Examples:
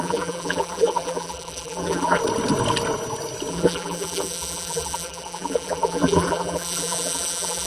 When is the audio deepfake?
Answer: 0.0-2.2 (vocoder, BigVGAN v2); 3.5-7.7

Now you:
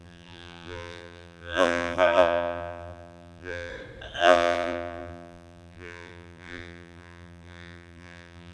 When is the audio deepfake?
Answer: 0.0-3.7 (vocoder, BigVGAN v2); 4.2-8.5

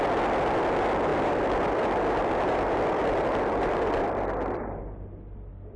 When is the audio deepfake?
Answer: 1.1-4.6 (vocoder, BigVGAN v2)

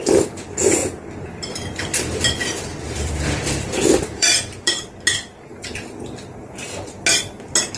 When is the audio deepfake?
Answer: 0.8-1.5 (vocoder, BigVGAN v2); 2.7-4.7

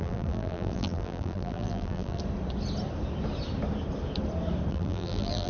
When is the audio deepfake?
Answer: 0.0-2.2 (vocoder, BigVGAN v2); 4.7-5.5

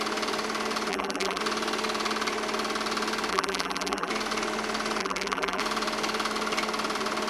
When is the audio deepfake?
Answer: 0.9-1.4 (vocoder, BigVGAN v2); 3.3-4.1; 5.0-5.6

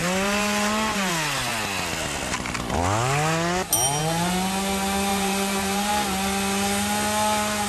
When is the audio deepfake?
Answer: 0.0-1.1 (vocoder, BigVGAN v2); 5.1-5.9

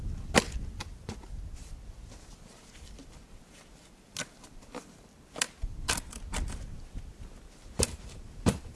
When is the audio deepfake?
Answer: 7.6-8.8 (vocoder, BigVGAN v2)